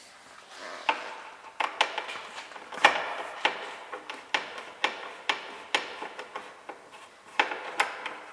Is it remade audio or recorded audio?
recorded